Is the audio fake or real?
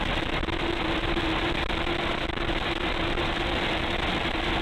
real